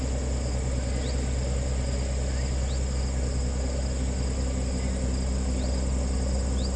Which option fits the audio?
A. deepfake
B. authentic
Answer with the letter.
B